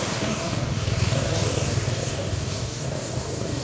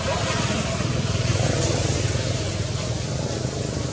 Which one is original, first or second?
second